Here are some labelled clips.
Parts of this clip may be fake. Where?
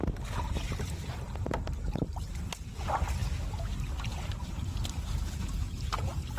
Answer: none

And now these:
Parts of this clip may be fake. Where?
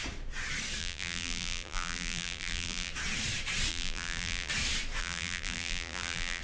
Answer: 0.8-2.9 (vocoder, BigVGAN v2); 3.7-4.5; 5.0-6.4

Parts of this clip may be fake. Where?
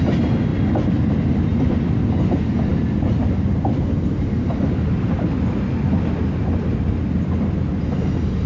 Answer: none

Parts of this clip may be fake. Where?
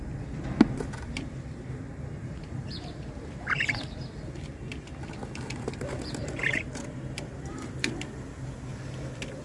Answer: 2.2-4.1 (vocoder, BigVGAN v2); 6.2-8.0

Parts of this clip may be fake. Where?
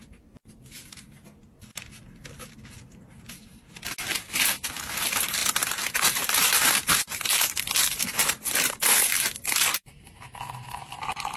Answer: 5.4-7.0 (vocoder, BigVGAN v2); 8.2-9.0